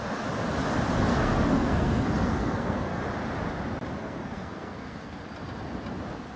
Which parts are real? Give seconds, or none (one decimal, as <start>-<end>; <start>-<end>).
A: 0.0-1.1; 3.0-3.9; 5.2-6.4